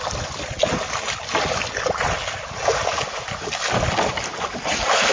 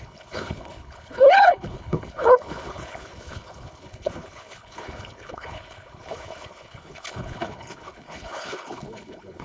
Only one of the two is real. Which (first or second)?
first